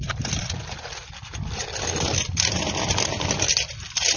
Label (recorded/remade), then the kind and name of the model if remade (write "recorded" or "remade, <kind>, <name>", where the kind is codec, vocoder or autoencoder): remade, vocoder, BigVGAN v2